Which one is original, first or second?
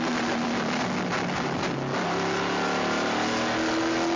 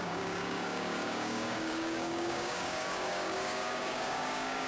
first